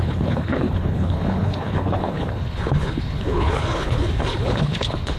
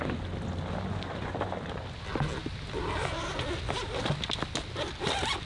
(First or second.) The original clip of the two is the second